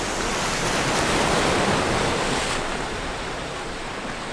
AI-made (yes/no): no